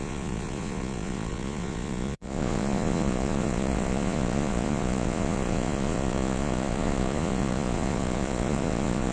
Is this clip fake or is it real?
fake